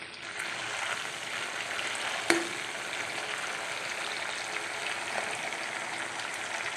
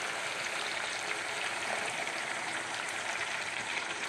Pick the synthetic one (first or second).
second